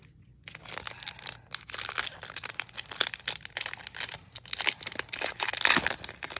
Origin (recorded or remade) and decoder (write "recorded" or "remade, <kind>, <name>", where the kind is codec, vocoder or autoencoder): recorded